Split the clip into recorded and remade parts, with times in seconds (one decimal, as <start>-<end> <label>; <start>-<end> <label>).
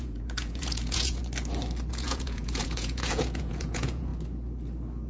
0.0-1.2 remade; 1.2-1.9 recorded; 1.9-4.1 remade; 4.1-5.1 recorded